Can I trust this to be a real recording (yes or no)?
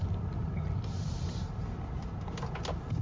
yes